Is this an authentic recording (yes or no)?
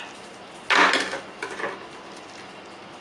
yes